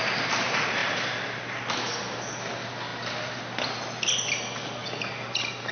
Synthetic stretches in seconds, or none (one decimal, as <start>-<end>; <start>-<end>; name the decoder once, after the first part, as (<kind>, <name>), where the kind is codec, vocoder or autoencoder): none